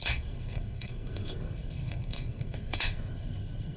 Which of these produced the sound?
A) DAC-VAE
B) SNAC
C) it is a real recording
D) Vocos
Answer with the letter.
B